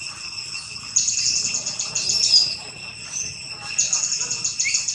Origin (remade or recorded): recorded